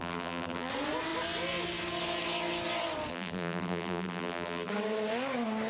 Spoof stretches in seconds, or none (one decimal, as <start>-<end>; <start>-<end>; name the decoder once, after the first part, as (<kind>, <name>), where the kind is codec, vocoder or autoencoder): 0.0-0.7 (vocoder, BigVGAN v2); 3.1-4.7